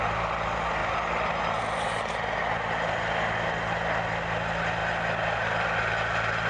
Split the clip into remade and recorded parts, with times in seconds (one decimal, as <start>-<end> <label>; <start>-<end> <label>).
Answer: 0.0-6.5 recorded